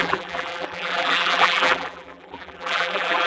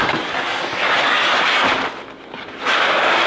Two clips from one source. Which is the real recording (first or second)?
second